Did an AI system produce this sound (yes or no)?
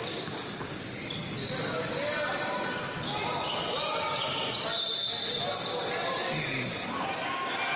no